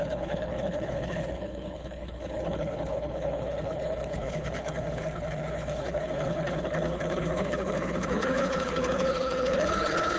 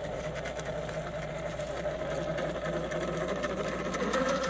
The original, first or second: second